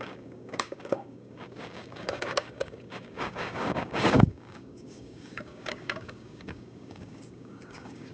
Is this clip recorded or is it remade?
remade